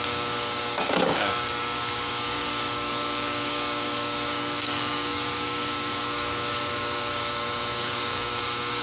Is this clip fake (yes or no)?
yes